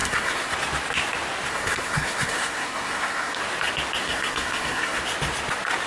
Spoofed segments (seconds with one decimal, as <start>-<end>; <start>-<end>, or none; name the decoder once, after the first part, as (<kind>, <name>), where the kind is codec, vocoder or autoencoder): 0.0-0.5 (codec, SNAC); 1.5-3.4; 4.0-5.0